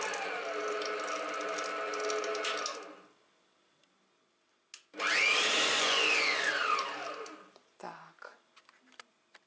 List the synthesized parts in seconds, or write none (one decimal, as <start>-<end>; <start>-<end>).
5.7-6.5